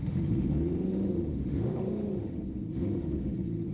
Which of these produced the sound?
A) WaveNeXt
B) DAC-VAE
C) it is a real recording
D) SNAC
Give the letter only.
B